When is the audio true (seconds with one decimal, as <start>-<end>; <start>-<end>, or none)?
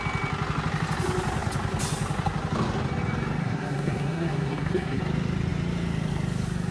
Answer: 0.0-3.4; 5.0-6.7